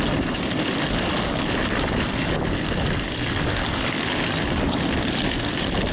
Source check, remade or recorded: recorded